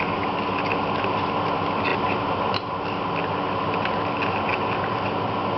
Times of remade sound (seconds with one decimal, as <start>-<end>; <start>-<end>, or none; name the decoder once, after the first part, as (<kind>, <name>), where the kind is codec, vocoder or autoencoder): none